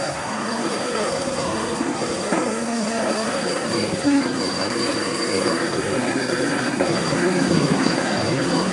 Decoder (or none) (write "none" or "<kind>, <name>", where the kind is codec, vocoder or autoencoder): codec, SNAC